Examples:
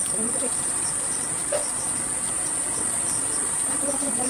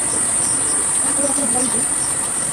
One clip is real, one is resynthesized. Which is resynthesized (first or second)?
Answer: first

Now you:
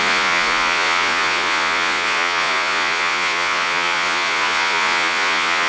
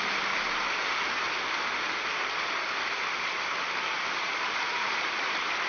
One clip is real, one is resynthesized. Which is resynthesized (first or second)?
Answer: first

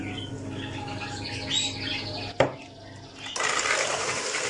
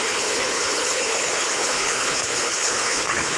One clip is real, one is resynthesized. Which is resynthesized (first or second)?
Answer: second